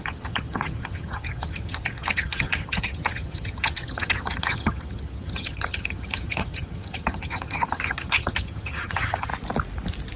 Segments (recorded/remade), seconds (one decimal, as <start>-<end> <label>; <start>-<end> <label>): 0.0-9.3 remade; 9.3-10.2 recorded